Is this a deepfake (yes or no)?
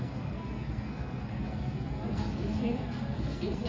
yes